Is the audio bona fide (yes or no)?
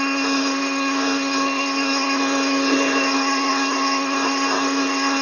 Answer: no